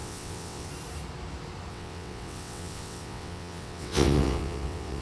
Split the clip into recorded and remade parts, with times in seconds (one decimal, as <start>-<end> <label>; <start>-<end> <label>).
0.0-0.7 remade; 0.7-1.7 recorded; 1.7-5.0 remade